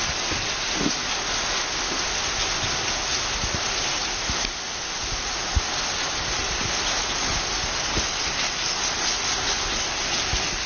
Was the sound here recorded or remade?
recorded